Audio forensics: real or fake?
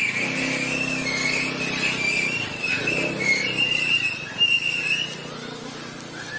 real